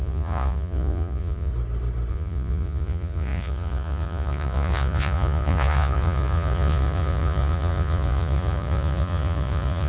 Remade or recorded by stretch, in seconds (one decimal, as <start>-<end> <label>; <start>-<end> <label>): 0.0-1.5 remade; 1.5-2.1 recorded; 2.1-9.9 remade